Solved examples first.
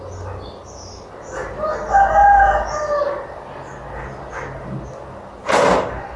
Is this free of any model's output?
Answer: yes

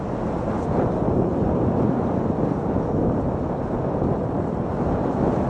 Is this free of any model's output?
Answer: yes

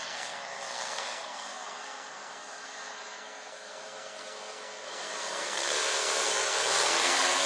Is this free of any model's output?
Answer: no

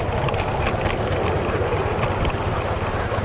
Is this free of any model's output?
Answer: yes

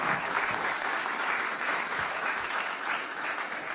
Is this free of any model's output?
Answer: no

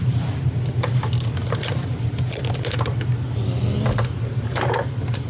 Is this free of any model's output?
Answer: yes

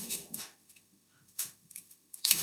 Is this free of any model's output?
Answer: no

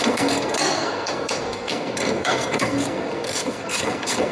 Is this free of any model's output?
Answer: no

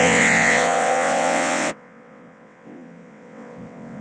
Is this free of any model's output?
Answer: no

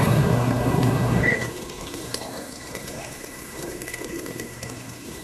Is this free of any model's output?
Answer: no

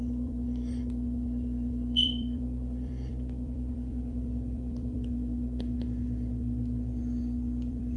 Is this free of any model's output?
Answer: no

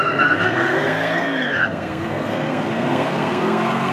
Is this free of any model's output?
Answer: no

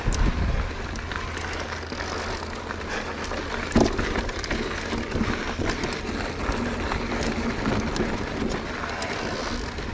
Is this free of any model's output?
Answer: yes